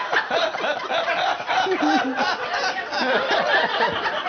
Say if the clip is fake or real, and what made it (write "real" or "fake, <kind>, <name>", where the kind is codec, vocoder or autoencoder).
real